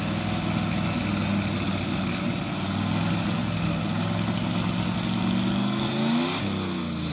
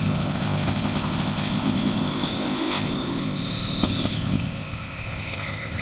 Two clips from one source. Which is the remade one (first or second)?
second